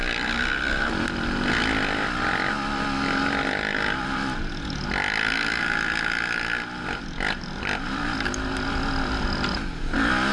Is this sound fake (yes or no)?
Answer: no